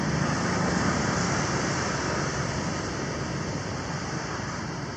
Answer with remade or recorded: recorded